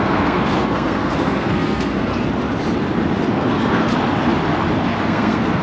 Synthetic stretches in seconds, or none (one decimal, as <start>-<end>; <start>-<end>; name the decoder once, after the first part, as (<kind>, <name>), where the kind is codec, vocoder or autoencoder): 0.0-2.1 (codec, SNAC); 3.3-3.9; 5.0-5.6